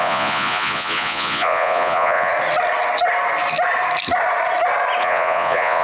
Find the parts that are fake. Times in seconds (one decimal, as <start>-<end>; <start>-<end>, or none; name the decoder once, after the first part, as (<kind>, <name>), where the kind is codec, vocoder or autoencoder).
0.0-2.3 (vocoder, Vocos); 5.0-5.8